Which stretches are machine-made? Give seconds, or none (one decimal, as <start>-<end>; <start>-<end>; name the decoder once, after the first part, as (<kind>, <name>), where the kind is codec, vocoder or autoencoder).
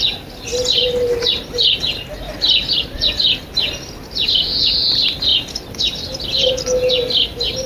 none